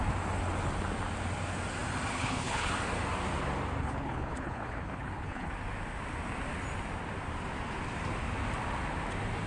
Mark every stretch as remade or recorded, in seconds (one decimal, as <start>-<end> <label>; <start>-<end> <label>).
0.0-2.1 recorded; 2.1-2.7 remade; 2.7-3.8 recorded; 3.8-5.5 remade; 5.5-9.5 recorded